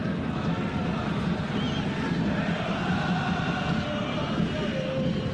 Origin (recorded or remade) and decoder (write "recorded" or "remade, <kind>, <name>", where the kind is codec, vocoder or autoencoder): recorded